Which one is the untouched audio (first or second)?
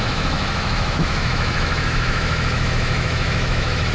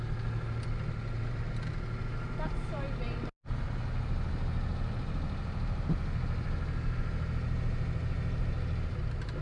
second